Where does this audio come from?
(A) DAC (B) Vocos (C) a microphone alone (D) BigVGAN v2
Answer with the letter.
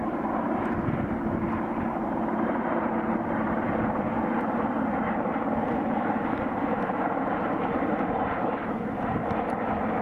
D